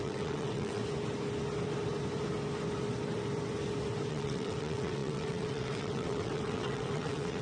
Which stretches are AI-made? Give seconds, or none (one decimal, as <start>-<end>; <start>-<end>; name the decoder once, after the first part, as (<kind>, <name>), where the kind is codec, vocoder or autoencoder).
0.0-0.8 (vocoder, WaveNeXt); 4.1-7.4